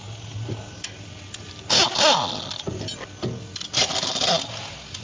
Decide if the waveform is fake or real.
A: real